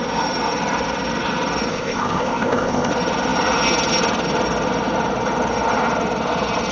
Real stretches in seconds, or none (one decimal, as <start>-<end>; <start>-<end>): 0.0-1.7; 2.9-6.7